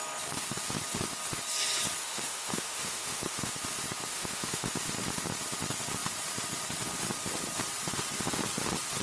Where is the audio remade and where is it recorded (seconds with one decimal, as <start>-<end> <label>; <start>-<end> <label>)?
0.0-2.0 recorded; 2.0-3.5 remade; 3.5-4.1 recorded; 4.1-4.8 remade; 4.8-9.0 recorded